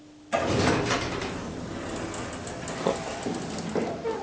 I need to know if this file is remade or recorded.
recorded